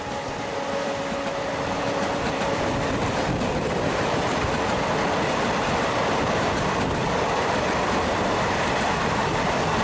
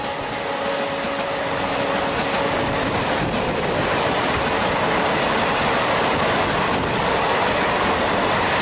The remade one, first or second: first